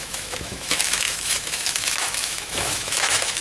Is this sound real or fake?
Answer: fake